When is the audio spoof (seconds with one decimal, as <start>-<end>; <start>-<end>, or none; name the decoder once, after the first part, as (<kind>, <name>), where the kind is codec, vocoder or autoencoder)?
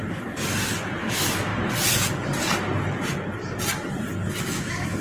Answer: 1.0-1.5 (autoencoder, DAC-VAE); 4.5-5.0